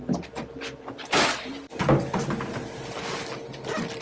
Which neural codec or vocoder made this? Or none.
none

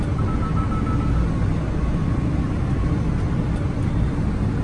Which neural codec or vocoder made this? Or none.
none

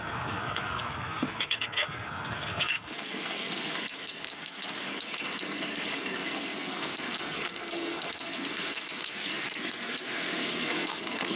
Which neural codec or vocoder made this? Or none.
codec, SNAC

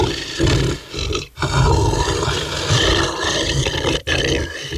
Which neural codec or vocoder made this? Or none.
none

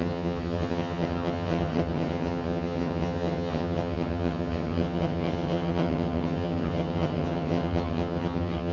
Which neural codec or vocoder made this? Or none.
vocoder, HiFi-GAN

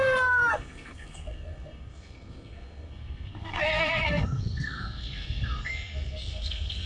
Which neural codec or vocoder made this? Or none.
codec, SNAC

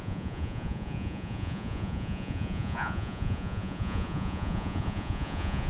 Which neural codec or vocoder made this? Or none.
vocoder, Vocos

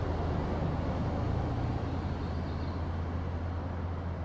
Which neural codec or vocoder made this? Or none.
none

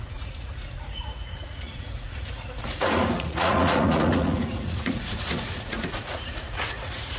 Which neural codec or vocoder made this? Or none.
vocoder, Vocos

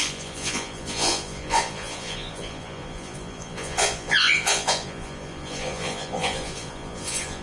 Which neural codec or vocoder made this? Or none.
vocoder, Vocos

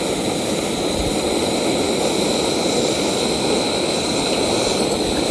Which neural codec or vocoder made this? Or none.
none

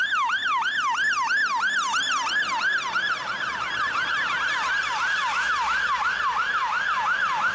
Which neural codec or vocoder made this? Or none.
none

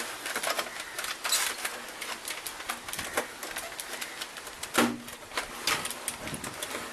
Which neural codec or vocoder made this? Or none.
none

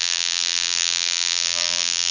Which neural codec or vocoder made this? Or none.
vocoder, BigVGAN v2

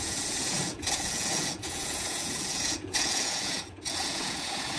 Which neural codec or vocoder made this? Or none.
vocoder, Vocos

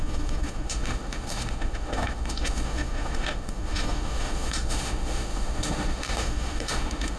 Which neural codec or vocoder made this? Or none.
autoencoder, DAC-VAE